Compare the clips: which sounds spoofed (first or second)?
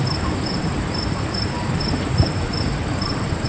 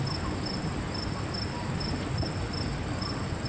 first